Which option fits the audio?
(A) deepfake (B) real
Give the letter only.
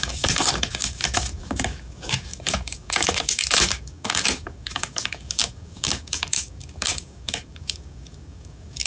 A